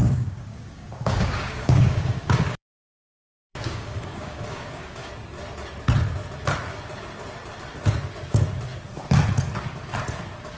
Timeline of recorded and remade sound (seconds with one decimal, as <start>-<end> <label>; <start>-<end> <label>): 0.0-5.1 remade; 5.1-10.6 recorded